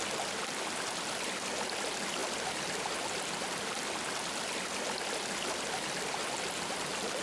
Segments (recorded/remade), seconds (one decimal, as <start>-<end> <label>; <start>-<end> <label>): 0.0-7.2 recorded